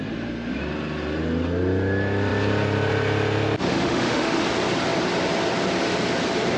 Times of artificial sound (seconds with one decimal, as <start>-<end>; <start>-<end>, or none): 3.7-4.4